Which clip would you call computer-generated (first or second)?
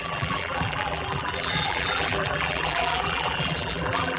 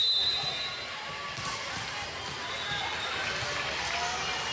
first